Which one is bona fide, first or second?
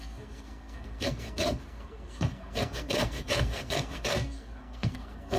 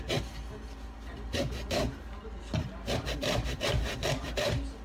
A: second